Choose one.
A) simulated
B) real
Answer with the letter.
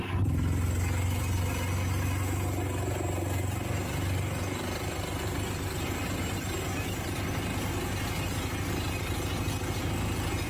B